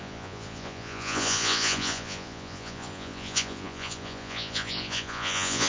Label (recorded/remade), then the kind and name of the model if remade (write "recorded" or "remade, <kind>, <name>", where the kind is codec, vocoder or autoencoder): remade, vocoder, Vocos